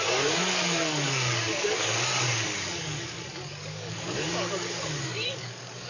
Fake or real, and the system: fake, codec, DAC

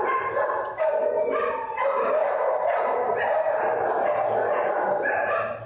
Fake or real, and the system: real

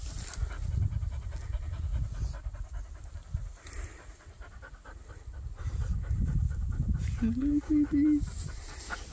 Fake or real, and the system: real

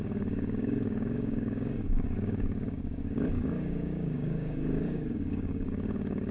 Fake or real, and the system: fake, codec, DAC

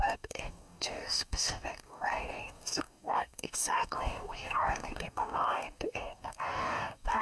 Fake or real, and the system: fake, codec, DAC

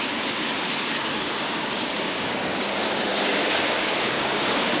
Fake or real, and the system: fake, codec, DAC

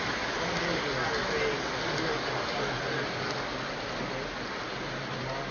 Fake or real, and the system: real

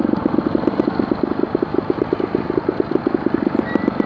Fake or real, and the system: real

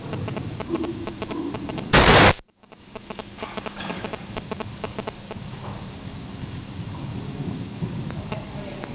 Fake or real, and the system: fake, codec, DAC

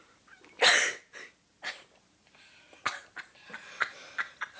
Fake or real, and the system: real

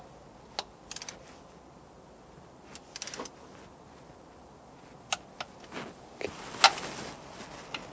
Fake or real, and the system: real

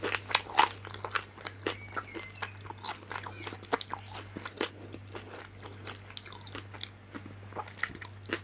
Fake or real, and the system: real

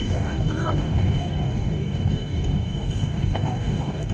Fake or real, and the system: fake, codec, DAC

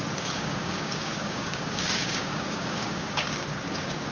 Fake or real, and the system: fake, codec, DAC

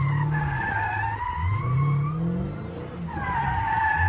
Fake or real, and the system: real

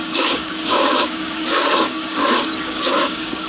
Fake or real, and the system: fake, codec, DAC